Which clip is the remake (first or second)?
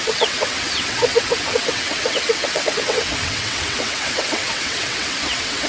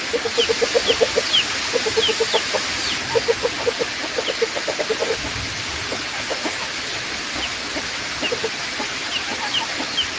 first